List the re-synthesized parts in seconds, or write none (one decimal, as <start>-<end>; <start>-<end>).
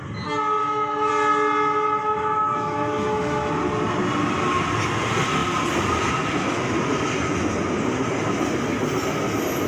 0.6-1.1; 2.0-3.5